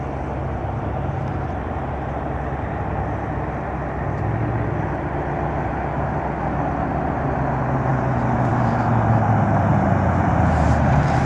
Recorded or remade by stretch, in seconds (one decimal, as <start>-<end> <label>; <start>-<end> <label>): 0.0-0.4 recorded; 0.4-2.9 remade; 2.9-9.7 recorded; 9.7-10.3 remade; 10.3-11.3 recorded